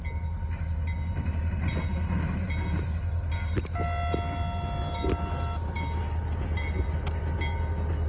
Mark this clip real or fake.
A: real